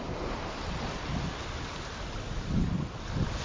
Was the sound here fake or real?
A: real